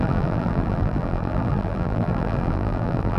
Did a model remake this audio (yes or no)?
yes